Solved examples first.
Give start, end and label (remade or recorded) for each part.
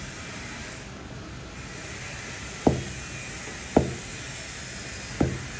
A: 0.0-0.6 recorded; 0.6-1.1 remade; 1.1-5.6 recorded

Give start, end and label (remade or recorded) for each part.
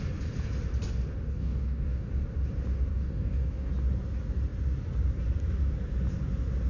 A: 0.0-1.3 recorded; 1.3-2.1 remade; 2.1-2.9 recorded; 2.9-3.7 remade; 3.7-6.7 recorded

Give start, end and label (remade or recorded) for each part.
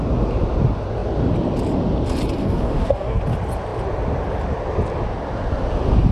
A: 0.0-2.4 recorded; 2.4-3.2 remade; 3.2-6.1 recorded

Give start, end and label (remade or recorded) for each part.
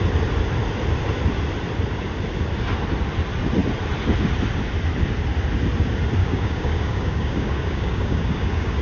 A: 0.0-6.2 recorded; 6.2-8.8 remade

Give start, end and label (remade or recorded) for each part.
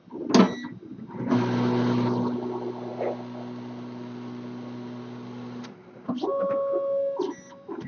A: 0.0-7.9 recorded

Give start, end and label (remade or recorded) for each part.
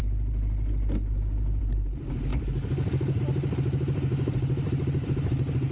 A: 0.0-2.3 recorded; 2.3-3.2 remade; 3.2-5.7 recorded